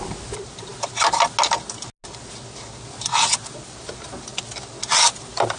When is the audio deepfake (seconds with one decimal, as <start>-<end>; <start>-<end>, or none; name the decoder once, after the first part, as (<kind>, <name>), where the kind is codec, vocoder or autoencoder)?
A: none